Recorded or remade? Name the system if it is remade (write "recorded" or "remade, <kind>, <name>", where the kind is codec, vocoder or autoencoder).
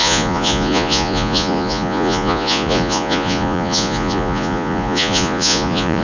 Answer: remade, vocoder, Vocos